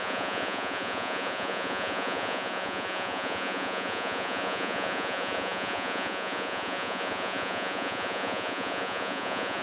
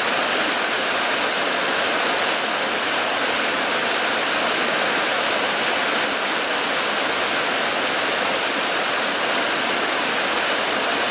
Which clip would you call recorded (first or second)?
second